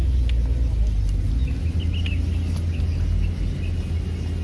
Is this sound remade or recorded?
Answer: recorded